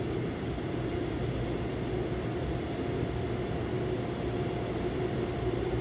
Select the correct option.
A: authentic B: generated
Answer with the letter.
A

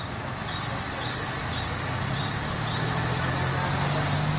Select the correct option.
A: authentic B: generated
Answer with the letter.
A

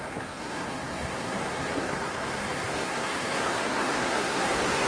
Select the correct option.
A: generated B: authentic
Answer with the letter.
A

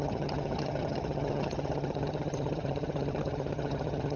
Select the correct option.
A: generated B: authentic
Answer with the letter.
A